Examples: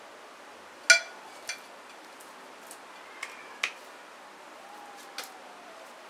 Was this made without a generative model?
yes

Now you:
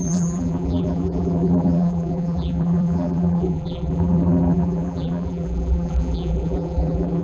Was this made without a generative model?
no